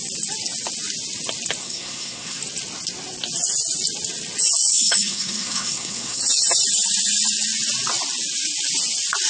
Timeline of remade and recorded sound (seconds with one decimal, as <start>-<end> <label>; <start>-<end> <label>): 0.0-1.6 recorded; 1.6-2.4 remade; 2.4-4.7 recorded; 4.7-6.2 remade; 6.2-9.3 recorded